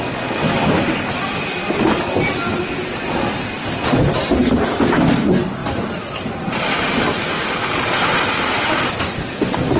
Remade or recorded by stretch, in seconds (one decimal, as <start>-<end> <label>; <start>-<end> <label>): 0.0-5.6 recorded; 5.6-7.0 remade; 7.0-9.8 recorded